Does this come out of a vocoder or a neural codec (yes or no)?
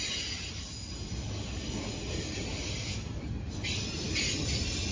no